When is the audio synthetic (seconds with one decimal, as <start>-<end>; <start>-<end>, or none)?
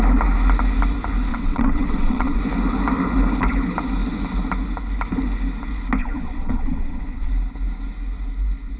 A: 1.3-2.4; 6.0-7.3